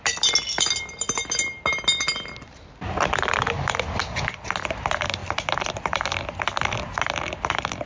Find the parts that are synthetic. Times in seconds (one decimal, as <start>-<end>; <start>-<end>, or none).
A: none